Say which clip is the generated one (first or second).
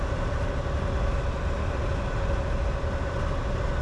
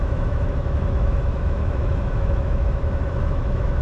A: second